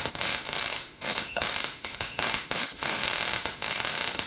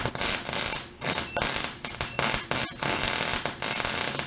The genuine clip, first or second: second